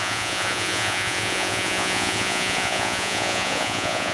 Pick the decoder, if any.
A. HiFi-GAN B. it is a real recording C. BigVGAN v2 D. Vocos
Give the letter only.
D